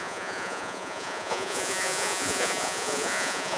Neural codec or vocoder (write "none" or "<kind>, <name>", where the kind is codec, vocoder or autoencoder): vocoder, Vocos